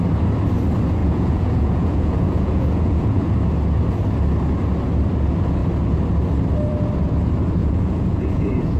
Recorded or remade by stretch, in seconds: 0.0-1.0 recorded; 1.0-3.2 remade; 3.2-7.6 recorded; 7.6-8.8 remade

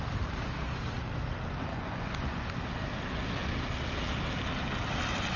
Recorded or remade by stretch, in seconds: 0.0-1.7 recorded; 1.7-2.5 remade; 2.5-5.4 recorded